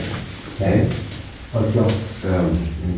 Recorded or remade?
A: recorded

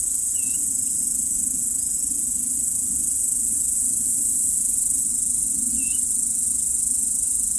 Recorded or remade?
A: remade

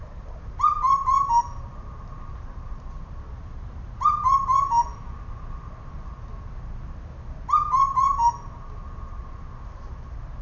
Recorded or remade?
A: recorded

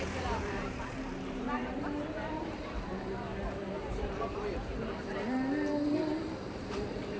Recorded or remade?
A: remade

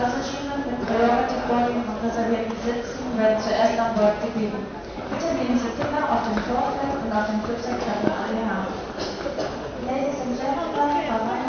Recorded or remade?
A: recorded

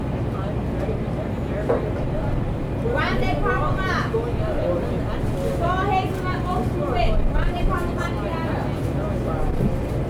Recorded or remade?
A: recorded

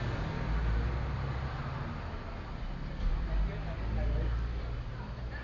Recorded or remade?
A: recorded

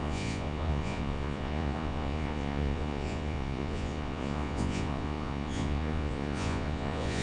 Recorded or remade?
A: remade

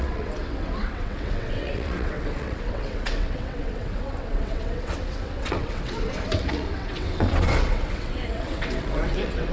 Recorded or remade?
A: remade